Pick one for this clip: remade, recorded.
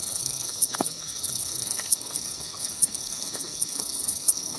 remade